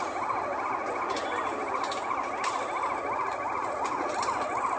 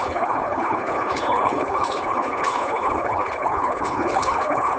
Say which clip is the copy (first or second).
second